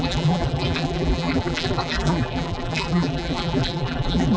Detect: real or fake fake